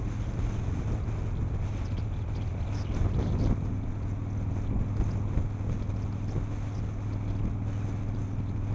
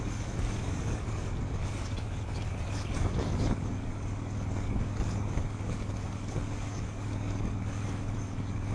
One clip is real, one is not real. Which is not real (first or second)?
second